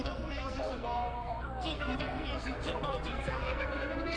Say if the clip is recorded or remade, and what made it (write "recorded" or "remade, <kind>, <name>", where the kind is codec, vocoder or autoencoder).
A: remade, codec, SNAC